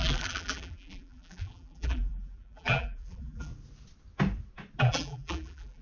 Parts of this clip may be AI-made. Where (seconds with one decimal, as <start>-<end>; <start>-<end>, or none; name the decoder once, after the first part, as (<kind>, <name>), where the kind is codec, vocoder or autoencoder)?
0.0-3.5 (vocoder, BigVGAN v2); 4.8-5.8